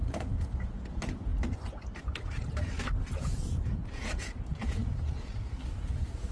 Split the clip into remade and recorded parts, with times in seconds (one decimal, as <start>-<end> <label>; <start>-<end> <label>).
0.0-1.3 remade; 1.3-3.1 recorded; 3.1-4.8 remade; 4.8-5.8 recorded; 5.8-6.3 remade

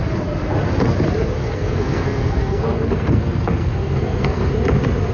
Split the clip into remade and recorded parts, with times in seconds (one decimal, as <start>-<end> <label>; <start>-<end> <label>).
0.0-1.4 recorded; 1.4-4.5 remade; 4.5-5.1 recorded

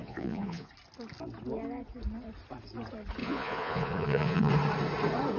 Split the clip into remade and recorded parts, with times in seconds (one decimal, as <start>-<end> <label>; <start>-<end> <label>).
0.0-0.7 remade; 0.7-3.2 recorded; 3.2-4.5 remade; 4.5-5.4 recorded

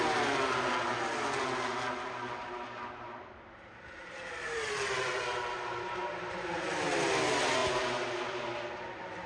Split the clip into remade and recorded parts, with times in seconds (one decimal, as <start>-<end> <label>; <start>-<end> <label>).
0.0-2.4 recorded; 2.4-6.7 remade; 6.7-9.3 recorded

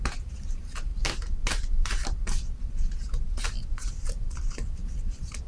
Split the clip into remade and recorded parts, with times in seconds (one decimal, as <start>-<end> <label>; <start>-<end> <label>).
0.0-0.9 remade; 0.9-3.7 recorded; 3.7-5.5 remade

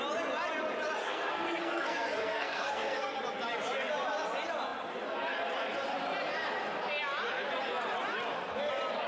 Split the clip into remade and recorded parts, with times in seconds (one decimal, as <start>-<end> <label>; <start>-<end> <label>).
0.0-1.0 recorded; 1.0-3.2 remade; 3.2-9.1 recorded